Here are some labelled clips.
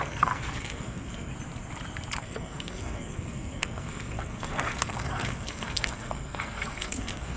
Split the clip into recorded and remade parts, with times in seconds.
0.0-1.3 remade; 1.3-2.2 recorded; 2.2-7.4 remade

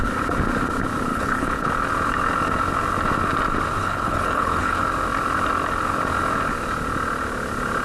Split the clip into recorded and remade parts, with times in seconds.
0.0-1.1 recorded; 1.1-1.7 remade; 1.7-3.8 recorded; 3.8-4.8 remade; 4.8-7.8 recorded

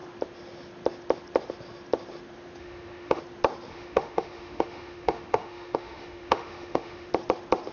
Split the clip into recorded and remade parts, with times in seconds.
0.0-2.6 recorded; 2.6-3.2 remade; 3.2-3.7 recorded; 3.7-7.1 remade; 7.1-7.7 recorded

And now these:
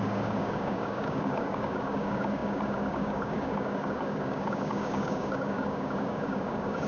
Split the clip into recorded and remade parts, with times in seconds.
0.0-6.9 remade

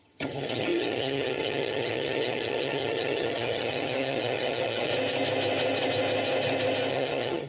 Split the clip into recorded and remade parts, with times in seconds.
0.0-4.9 remade; 4.9-6.9 recorded; 6.9-7.5 remade